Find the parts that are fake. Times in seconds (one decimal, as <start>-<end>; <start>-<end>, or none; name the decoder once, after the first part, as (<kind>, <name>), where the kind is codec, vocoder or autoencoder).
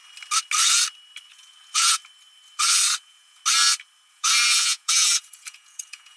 1.2-2.0 (vocoder, Vocos); 3.0-3.4; 4.1-6.2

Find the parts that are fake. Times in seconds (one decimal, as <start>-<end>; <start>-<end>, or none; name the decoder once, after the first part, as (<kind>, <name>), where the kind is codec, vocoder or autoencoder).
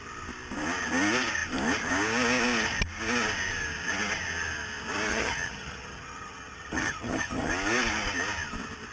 5.1-7.5 (vocoder, HiFi-GAN)